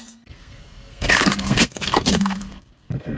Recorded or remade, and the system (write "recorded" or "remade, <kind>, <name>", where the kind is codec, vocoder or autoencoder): remade, codec, SNAC